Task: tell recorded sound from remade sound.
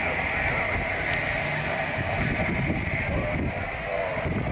recorded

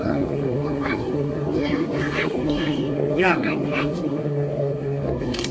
remade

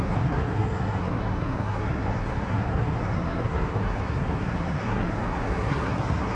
remade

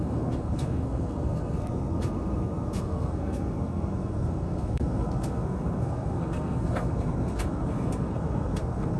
remade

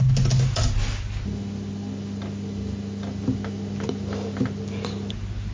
recorded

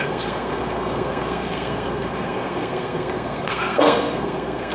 remade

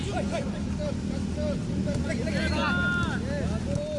recorded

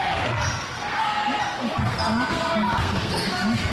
remade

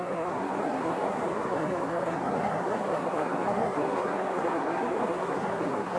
remade